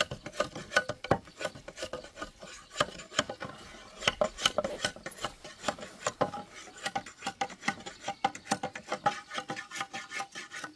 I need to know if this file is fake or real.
real